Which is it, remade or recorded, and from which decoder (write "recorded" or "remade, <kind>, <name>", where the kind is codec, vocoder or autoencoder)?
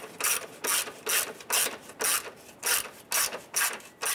recorded